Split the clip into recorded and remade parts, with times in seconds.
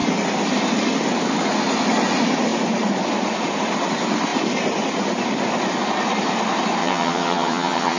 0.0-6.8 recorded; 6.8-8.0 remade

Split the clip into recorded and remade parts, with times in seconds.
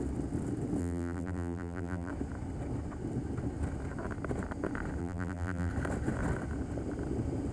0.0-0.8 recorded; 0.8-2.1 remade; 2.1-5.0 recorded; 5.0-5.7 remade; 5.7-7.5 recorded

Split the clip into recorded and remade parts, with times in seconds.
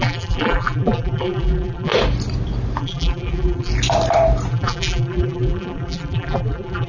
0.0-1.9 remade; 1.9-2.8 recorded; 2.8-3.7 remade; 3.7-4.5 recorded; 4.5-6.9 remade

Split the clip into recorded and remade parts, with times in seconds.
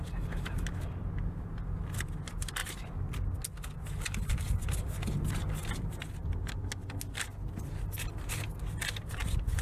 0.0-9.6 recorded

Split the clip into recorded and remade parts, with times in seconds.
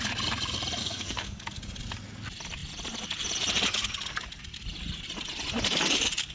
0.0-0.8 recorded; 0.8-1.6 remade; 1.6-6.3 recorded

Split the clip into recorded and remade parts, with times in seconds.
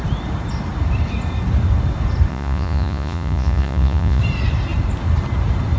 0.0-2.3 recorded; 2.3-4.2 remade; 4.2-5.8 recorded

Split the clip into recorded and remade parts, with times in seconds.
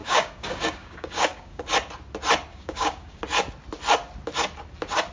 0.0-1.6 remade; 1.6-2.5 recorded; 2.5-3.2 remade; 3.2-5.1 recorded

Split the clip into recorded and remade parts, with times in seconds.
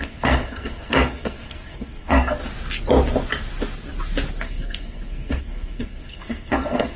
0.0-2.4 remade; 2.4-4.4 recorded; 4.4-7.0 remade